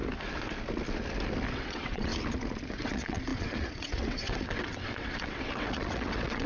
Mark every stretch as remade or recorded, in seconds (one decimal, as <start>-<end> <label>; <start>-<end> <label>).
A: 0.0-1.5 recorded; 1.5-2.1 remade; 2.1-2.7 recorded; 2.7-6.5 remade